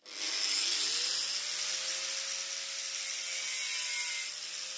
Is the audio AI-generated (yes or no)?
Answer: no